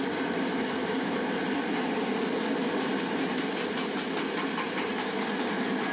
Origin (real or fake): real